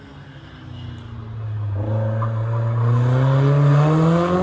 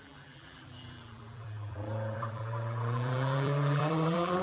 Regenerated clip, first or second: second